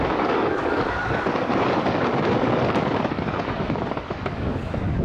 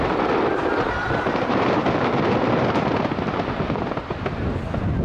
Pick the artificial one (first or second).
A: first